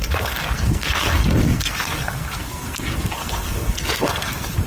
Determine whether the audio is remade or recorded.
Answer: remade